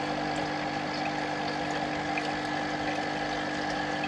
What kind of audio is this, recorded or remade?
recorded